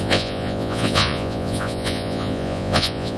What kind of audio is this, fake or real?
fake